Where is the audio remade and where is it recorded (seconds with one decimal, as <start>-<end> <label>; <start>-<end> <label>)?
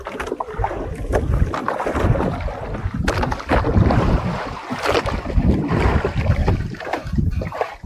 0.0-6.4 recorded; 6.4-7.9 remade